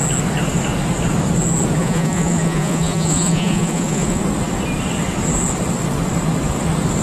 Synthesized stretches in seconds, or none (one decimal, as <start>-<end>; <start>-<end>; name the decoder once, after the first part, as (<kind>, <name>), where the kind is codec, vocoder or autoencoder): 1.8-4.2 (vocoder, Vocos)